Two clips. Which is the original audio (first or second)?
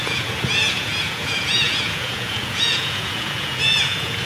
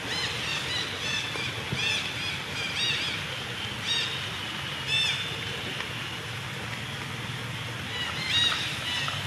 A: second